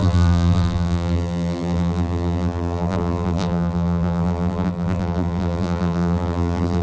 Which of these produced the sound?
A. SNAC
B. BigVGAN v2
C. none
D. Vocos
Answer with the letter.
B